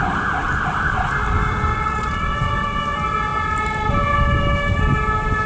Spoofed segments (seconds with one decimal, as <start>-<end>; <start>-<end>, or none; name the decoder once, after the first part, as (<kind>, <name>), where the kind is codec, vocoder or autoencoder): 1.7-2.4 (vocoder, WaveNeXt)